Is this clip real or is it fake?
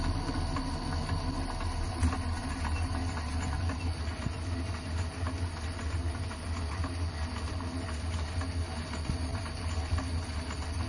real